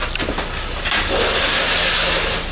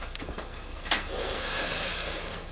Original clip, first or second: first